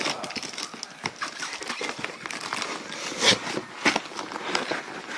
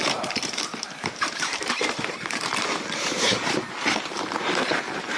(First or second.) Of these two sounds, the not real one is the second